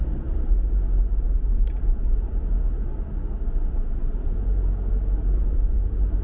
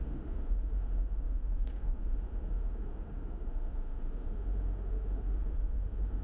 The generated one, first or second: second